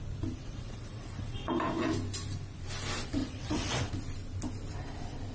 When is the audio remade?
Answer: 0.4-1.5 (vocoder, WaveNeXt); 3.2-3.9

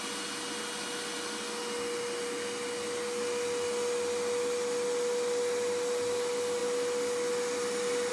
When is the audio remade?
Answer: none

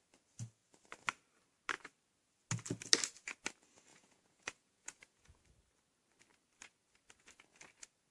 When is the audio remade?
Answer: 3.9-5.4 (vocoder, Vocos)